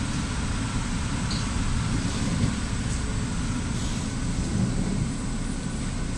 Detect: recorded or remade recorded